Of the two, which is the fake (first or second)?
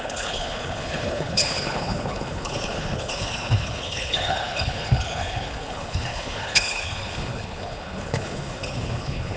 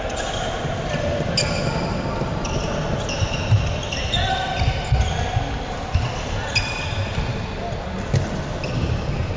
first